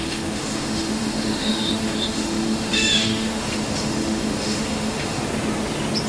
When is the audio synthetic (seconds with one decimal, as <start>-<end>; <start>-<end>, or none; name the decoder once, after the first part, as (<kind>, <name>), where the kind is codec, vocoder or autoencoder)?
0.0-5.2 (autoencoder, DAC-VAE)